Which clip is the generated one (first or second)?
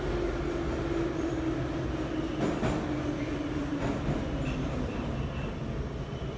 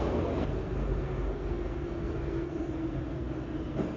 second